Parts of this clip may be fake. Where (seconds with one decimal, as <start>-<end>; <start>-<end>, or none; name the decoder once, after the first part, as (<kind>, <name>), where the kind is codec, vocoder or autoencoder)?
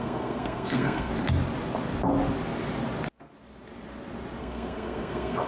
0.0-1.1 (codec, SNAC); 4.4-5.5